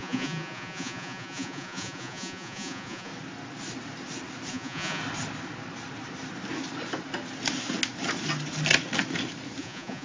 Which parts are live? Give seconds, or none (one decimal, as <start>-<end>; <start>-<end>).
3.1-4.5; 5.0-9.6